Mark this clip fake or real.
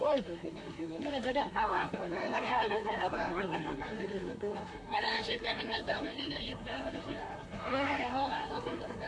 fake